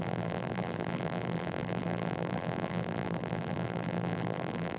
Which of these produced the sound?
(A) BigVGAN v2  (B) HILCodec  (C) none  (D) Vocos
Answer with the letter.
A